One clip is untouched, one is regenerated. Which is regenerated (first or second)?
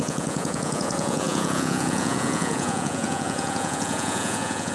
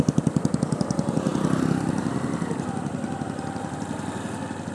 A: first